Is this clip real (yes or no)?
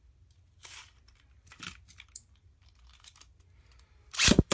yes